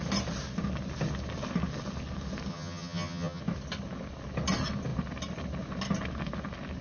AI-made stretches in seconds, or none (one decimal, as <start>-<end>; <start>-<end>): 2.5-3.4